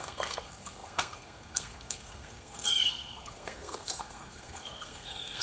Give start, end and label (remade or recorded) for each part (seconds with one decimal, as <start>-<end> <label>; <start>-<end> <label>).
0.0-5.4 remade